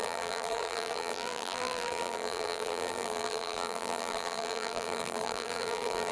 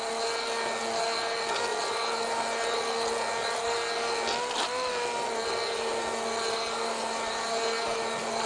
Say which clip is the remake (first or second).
first